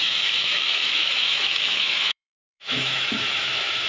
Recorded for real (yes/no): no